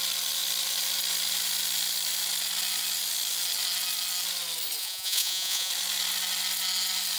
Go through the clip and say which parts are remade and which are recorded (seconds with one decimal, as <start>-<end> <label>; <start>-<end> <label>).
0.0-4.8 recorded; 4.8-5.7 remade; 5.7-7.2 recorded